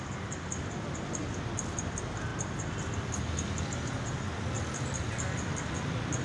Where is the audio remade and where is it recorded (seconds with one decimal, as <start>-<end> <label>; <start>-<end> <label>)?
0.0-6.2 recorded